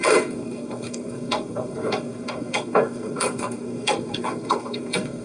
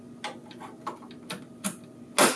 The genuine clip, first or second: second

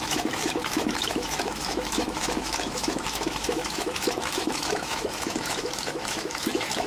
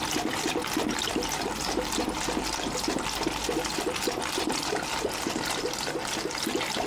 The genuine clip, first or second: second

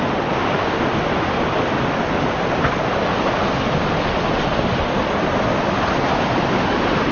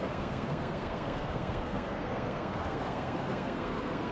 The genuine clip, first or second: first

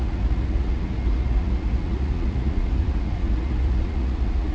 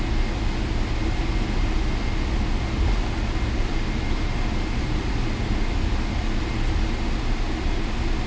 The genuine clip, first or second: second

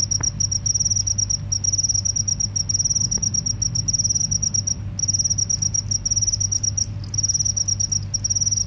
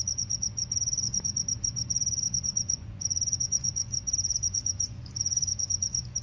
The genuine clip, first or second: first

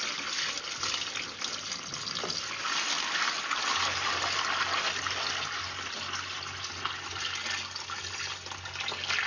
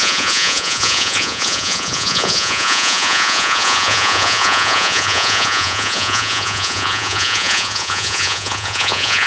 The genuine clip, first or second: first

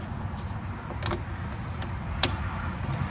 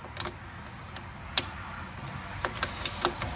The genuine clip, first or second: second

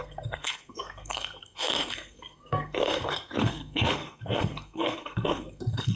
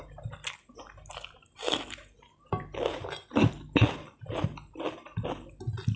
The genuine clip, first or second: second